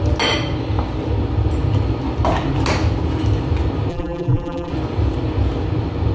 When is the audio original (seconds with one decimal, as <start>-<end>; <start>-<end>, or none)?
0.0-3.9; 4.7-6.1